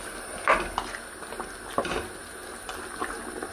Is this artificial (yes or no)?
no